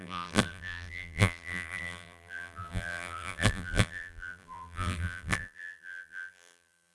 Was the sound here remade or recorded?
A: remade